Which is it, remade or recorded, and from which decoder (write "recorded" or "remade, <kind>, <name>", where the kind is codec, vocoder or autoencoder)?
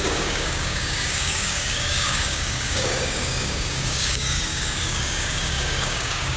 remade, codec, DAC